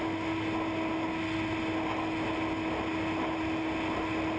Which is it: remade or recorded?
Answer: recorded